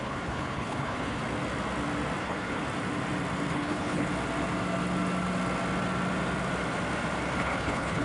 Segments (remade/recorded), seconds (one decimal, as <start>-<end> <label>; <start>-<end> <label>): 0.0-1.2 remade; 1.2-2.2 recorded; 2.2-2.6 remade; 2.6-3.5 recorded; 3.5-4.1 remade; 4.1-7.4 recorded; 7.4-8.0 remade